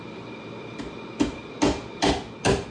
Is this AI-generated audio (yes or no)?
no